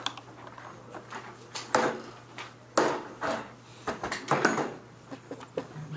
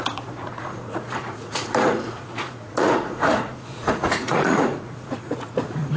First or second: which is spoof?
second